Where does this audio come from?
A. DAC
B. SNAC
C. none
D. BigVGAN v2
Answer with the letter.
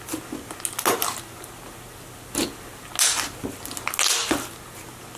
C